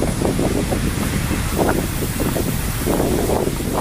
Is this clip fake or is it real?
real